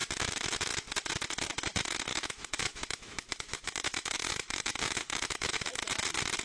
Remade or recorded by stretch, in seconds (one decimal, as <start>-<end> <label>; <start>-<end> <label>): 0.0-2.1 recorded; 2.1-5.8 remade; 5.8-6.4 recorded